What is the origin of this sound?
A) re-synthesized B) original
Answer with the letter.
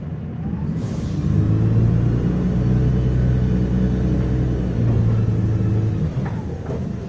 B